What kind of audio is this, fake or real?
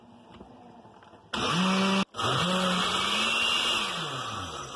real